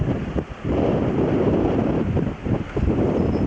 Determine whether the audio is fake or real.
fake